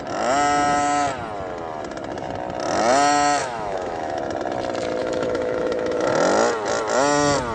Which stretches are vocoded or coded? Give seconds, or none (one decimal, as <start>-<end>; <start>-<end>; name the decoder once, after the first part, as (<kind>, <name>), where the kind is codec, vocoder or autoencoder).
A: 3.4-4.2 (autoencoder, DAC-VAE); 5.0-6.1